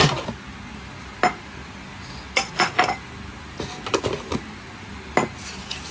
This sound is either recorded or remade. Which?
recorded